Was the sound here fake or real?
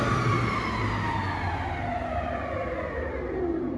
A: real